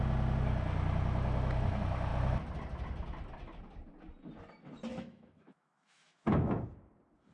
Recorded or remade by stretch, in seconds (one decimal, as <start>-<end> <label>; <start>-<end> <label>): 0.0-4.9 recorded; 4.9-6.6 remade; 6.6-7.3 recorded